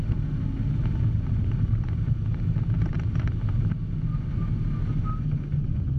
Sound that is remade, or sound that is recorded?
recorded